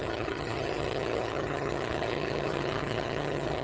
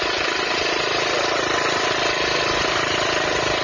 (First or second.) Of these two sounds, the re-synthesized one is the first